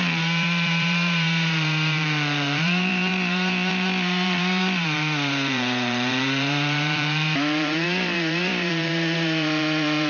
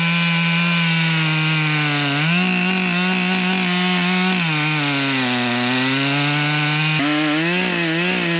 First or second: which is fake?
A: first